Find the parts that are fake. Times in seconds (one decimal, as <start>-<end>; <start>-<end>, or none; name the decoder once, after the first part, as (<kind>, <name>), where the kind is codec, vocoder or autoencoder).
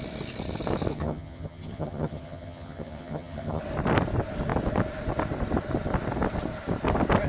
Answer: 0.9-3.6 (vocoder, HiFi-GAN)